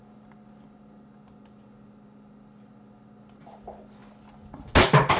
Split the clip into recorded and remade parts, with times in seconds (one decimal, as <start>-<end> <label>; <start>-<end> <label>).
0.0-5.2 recorded